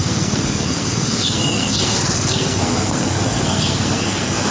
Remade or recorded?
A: remade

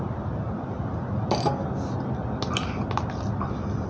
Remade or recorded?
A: recorded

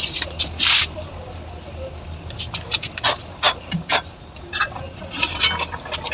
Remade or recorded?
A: recorded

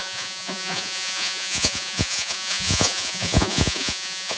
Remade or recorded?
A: remade